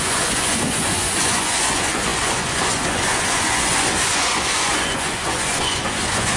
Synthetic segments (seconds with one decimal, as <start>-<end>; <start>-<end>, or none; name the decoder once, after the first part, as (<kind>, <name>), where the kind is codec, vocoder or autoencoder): 0.0-6.4 (vocoder, Vocos)